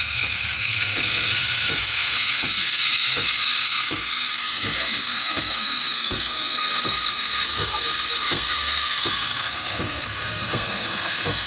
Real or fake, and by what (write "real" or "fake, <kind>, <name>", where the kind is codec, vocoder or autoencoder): fake, codec, SNAC